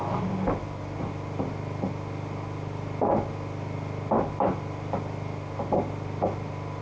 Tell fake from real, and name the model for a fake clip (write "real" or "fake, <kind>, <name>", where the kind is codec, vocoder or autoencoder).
real